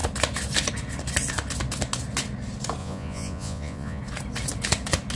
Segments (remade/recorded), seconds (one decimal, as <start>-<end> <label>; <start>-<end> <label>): 0.0-2.8 recorded; 2.8-4.0 remade; 4.0-5.2 recorded

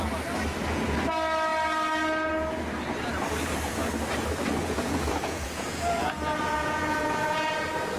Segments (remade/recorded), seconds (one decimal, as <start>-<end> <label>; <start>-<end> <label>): 0.0-4.6 recorded; 4.6-7.5 remade; 7.5-8.0 recorded

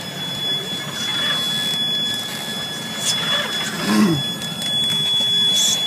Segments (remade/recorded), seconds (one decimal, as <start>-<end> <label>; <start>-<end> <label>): 0.0-4.9 recorded; 4.9-5.5 remade; 5.5-5.9 recorded